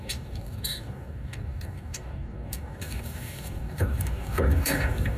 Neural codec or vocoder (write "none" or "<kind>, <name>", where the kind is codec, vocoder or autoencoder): codec, DAC